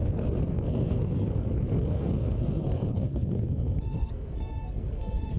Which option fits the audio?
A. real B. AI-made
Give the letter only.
B